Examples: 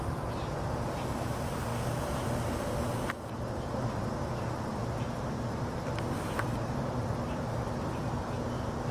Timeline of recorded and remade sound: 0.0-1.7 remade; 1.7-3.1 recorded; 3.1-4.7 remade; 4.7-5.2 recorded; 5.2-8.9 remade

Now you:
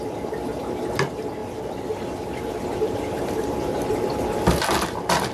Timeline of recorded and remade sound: 0.0-1.4 recorded; 1.4-3.9 remade; 3.9-5.3 recorded

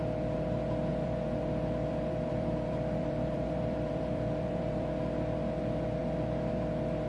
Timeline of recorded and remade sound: 0.0-0.9 recorded; 0.9-5.0 remade; 5.0-7.1 recorded